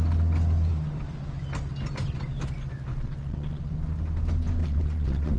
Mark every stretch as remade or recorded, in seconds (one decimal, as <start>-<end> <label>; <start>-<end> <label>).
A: 0.0-2.9 recorded; 2.9-3.7 remade; 3.7-4.6 recorded; 4.6-5.4 remade